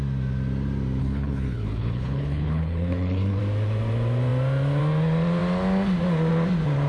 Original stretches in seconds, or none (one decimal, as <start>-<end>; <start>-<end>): 0.0-1.0; 3.4-6.9